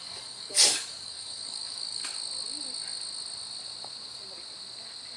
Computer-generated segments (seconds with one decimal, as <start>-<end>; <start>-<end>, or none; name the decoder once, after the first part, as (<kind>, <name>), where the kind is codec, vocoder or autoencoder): 0.0-2.0 (codec, DAC)